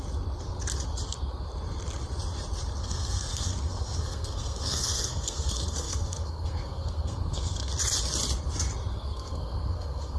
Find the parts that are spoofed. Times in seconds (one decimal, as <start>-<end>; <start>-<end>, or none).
2.8-7.7; 8.9-10.2